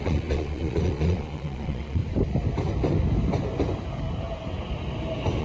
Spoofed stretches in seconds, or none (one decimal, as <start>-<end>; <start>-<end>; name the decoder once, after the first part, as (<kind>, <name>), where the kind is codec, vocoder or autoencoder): 0.0-2.0 (vocoder, Vocos)